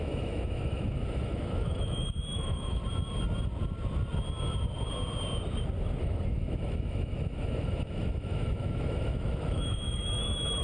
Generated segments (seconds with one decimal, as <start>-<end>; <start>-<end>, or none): 0.0-2.8; 6.0-10.6